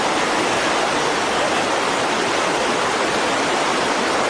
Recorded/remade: recorded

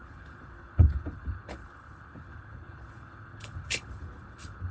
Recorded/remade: remade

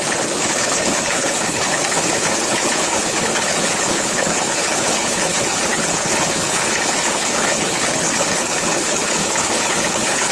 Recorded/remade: remade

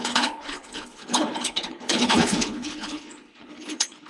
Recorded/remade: remade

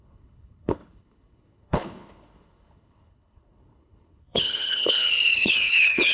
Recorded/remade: remade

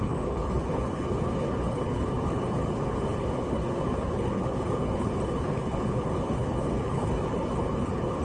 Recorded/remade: remade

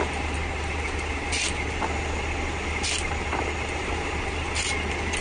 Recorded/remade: recorded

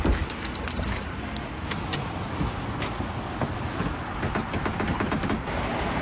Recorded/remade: recorded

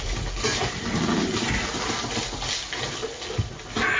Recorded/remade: recorded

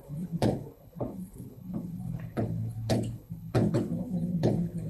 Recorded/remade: remade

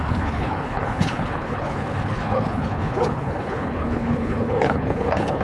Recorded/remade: remade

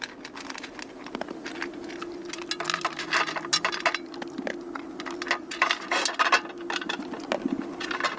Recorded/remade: recorded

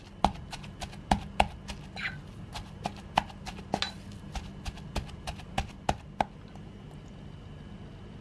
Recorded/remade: recorded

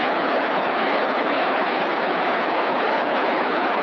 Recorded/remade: remade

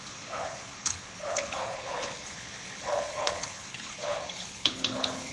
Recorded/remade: remade